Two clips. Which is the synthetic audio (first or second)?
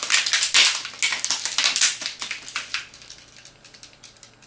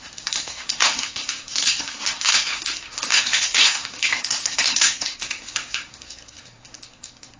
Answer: second